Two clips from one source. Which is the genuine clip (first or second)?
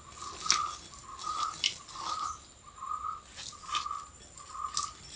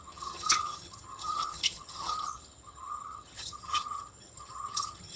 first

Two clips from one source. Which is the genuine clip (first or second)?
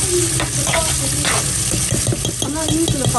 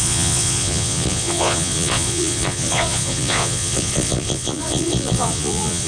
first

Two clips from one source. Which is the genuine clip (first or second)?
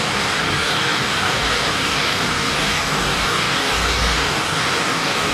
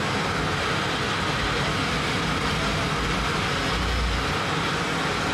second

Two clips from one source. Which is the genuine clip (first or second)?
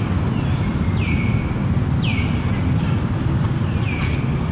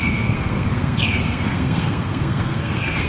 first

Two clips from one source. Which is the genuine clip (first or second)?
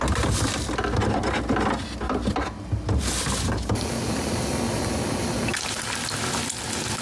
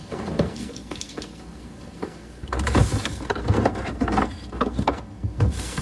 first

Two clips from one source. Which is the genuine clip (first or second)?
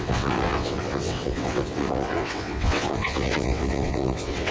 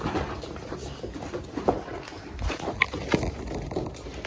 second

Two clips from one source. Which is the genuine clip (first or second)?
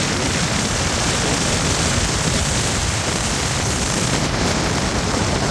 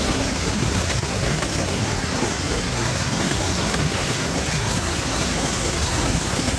first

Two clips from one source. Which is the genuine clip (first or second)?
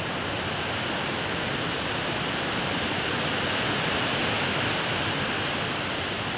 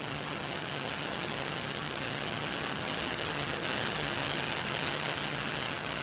first